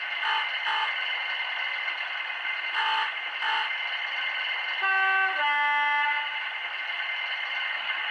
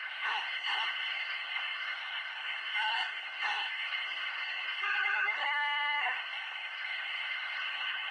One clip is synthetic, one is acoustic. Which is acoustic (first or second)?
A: first